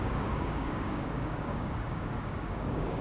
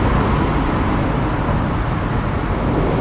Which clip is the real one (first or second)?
second